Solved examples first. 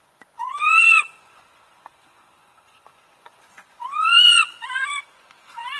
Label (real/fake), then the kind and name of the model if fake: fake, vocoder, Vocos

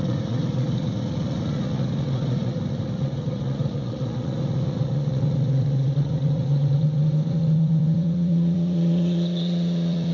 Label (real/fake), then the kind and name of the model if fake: fake, vocoder, Vocos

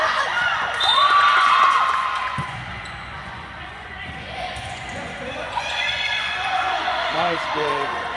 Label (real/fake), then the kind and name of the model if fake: fake, vocoder, Vocos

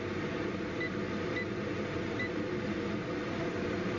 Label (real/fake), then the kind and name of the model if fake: real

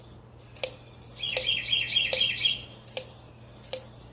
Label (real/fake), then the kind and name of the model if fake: real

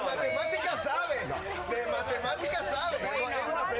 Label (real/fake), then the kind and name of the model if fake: real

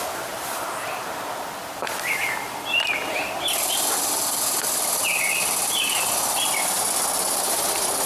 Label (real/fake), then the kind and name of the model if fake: fake, vocoder, BigVGAN v2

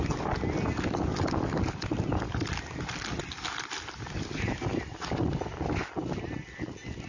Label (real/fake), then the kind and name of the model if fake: real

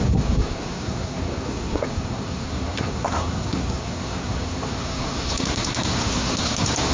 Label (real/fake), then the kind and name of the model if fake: fake, codec, SNAC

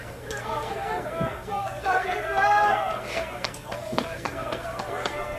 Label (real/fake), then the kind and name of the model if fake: fake, codec, SNAC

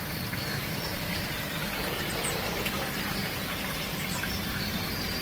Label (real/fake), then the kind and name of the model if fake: fake, vocoder, BigVGAN v2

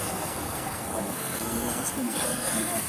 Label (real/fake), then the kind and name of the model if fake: fake, codec, SNAC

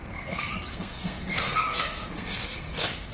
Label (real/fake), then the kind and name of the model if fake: fake, codec, SNAC